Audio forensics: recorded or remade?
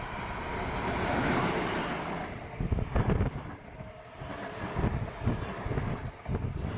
recorded